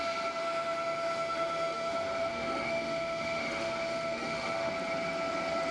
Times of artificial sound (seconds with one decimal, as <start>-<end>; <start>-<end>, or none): 0.4-1.9; 2.3-4.7